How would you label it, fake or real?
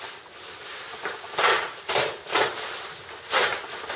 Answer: real